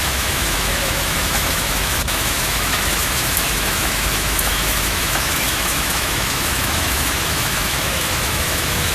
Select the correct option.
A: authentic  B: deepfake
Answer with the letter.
B